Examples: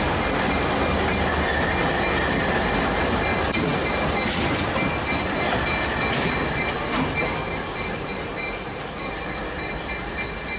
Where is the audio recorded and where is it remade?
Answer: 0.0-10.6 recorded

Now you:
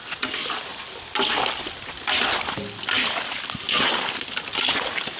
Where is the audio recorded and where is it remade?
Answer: 0.0-5.2 recorded